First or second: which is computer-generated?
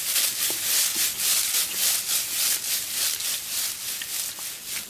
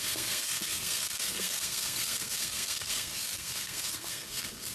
second